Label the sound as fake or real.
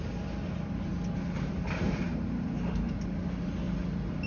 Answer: real